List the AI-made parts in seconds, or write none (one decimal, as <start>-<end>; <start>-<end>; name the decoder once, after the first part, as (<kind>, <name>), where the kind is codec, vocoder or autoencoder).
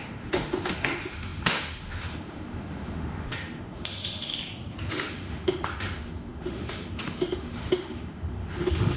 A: 0.0-4.3 (autoencoder, DAC-VAE); 4.9-9.0